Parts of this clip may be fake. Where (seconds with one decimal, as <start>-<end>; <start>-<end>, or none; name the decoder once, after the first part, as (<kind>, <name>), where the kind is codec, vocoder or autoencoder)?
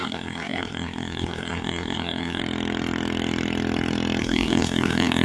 0.0-2.4 (codec, SNAC); 4.2-5.2